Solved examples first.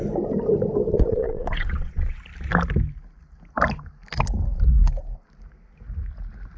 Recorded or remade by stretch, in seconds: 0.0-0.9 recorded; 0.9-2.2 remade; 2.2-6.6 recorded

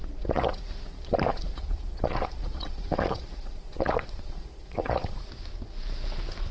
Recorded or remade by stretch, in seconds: 0.0-0.6 remade; 0.6-1.3 recorded; 1.3-5.2 remade; 5.2-6.5 recorded

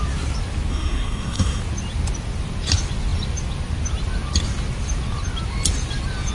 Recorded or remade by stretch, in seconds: 0.0-0.7 recorded; 0.7-1.6 remade; 1.6-6.3 recorded

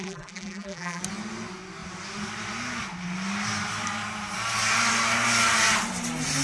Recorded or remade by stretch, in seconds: 0.0-1.0 remade; 1.0-6.4 recorded

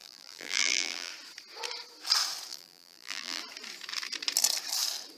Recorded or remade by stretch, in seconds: 0.0-1.1 remade; 1.1-2.5 recorded; 2.5-3.4 remade; 3.4-5.2 recorded

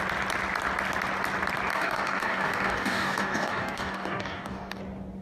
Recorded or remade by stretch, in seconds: 0.0-1.7 recorded; 1.7-4.8 remade; 4.8-5.2 recorded